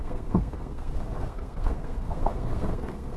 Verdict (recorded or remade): remade